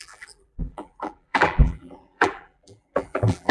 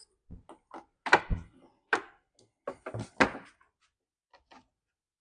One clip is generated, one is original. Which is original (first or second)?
second